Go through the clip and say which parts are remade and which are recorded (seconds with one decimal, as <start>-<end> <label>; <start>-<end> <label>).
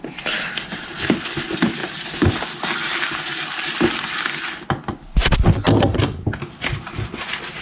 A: 0.0-7.6 recorded